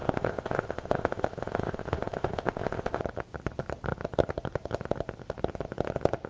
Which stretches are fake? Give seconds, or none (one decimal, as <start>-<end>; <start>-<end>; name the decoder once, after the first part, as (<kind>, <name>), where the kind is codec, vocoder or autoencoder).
0.0-3.0 (codec, ZipCodec)

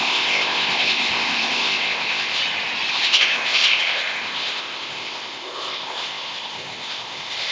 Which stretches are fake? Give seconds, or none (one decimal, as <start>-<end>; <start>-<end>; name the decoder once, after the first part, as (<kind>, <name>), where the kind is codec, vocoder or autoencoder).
0.0-2.4 (codec, ZipCodec); 2.9-7.5

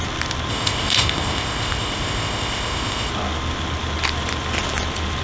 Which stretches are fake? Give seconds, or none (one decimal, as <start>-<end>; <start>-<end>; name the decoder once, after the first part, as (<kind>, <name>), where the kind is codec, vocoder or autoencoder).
0.5-3.1 (codec, ZipCodec)

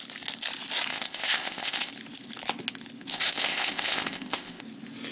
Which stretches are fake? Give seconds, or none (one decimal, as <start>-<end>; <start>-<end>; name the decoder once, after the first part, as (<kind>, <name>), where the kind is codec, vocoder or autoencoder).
0.9-1.9 (codec, ZipCodec); 3.1-4.6

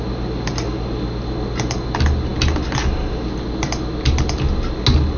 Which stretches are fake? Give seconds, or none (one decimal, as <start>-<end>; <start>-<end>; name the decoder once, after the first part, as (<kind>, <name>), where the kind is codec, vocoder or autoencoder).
none